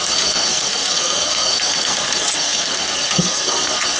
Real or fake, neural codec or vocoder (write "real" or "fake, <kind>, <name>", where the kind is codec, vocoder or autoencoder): fake, codec, SNAC